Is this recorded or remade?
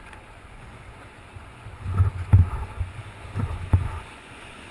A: remade